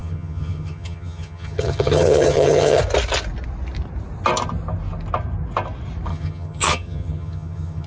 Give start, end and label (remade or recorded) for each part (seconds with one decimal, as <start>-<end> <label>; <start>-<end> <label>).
0.0-2.8 remade; 2.8-6.1 recorded; 6.1-7.9 remade